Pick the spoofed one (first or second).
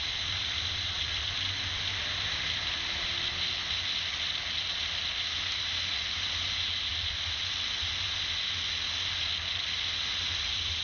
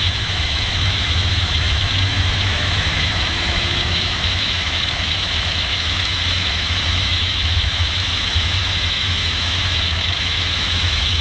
second